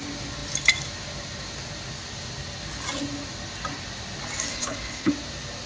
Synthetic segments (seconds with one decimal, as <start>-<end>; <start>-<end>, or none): 4.5-5.1